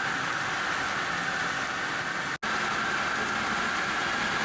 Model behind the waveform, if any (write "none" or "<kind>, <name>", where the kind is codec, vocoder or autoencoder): none